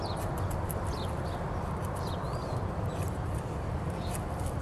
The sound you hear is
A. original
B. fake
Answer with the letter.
A